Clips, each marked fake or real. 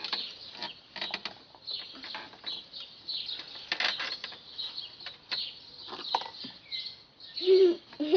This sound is real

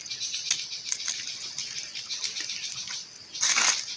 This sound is real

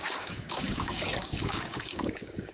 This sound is fake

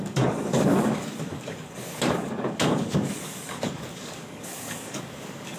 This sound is fake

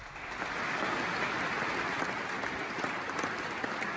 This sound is real